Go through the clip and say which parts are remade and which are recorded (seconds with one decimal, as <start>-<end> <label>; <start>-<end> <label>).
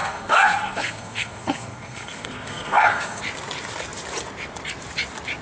0.0-3.2 remade; 3.2-5.4 recorded